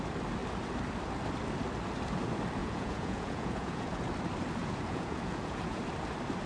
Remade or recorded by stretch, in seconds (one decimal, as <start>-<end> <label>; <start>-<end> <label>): 0.0-2.6 recorded; 2.6-4.0 remade; 4.0-4.6 recorded; 4.6-5.8 remade; 5.8-6.5 recorded